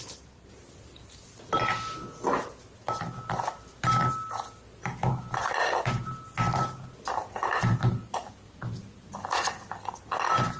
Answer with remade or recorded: recorded